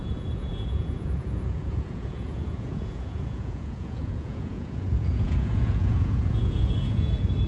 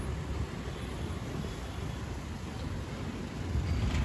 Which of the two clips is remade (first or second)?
first